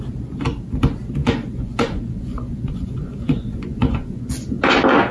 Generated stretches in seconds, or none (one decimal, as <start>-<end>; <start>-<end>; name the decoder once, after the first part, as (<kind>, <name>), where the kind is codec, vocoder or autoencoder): 1.2-4.2 (vocoder, Vocos)